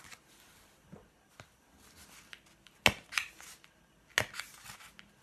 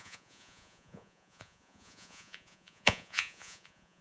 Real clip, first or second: first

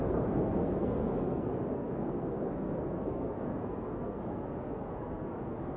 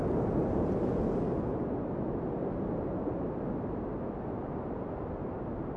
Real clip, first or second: second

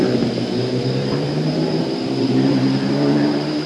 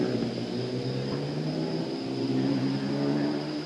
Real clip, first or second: second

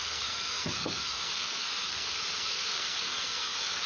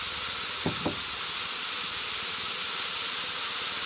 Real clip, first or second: second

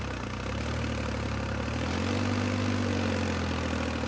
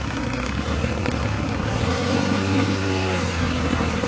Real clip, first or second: first